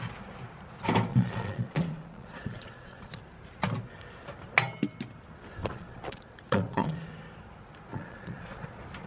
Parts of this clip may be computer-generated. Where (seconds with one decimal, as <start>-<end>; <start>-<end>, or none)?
1.1-3.2; 5.6-7.1; 7.9-8.6